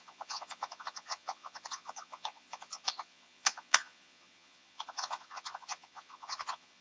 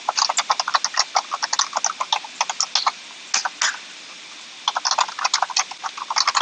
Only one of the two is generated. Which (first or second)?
first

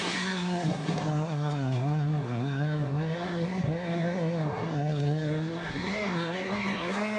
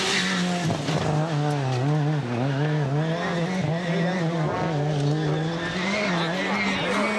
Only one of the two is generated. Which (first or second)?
first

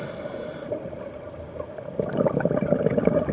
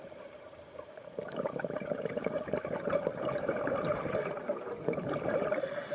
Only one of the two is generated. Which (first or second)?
second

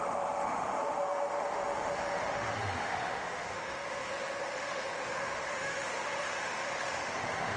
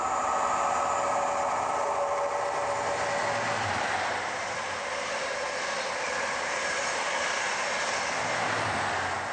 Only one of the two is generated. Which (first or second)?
first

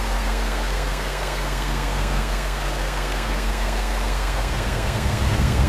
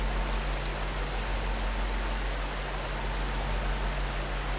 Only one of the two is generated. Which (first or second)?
first